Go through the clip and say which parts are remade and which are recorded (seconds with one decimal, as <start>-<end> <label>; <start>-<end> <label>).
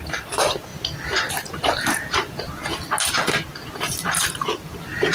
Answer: 0.0-0.7 remade; 0.7-1.3 recorded; 1.3-2.6 remade; 2.6-3.7 recorded; 3.7-5.1 remade